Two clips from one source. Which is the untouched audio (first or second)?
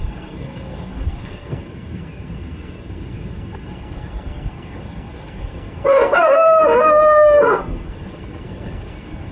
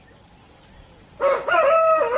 second